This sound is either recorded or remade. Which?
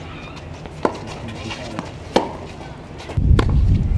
recorded